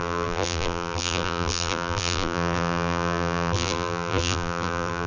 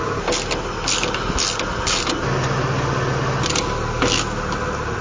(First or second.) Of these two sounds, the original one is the second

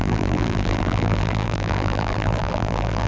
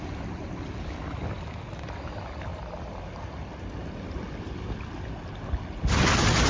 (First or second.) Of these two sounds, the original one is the second